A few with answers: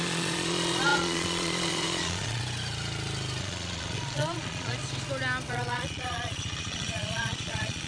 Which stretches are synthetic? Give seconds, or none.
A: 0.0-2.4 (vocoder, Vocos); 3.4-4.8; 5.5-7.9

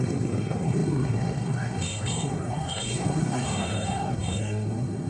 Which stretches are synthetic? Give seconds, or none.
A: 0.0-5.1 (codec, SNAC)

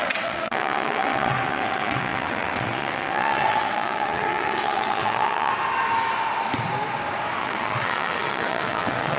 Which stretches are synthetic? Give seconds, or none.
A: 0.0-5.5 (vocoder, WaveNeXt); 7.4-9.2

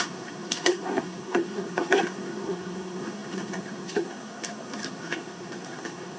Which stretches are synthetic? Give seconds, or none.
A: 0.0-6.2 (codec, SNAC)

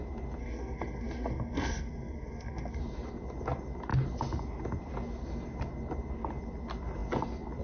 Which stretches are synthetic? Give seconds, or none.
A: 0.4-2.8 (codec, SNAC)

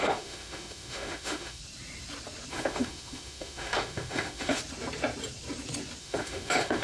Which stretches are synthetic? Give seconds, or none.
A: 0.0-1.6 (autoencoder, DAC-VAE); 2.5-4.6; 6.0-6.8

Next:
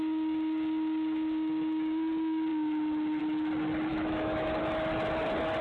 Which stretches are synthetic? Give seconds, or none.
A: 3.9-4.6 (autoencoder, DAC-VAE)